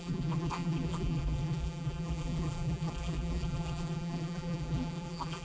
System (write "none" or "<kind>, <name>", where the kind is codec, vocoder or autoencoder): vocoder, BigVGAN v2